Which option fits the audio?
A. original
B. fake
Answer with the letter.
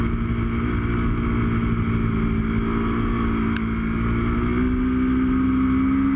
A